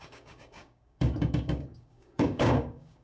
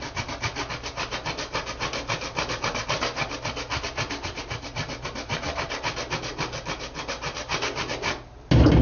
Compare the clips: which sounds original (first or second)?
second